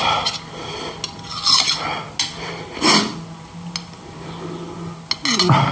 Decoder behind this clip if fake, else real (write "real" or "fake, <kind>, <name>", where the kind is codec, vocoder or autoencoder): real